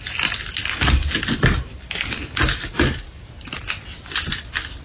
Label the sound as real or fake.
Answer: real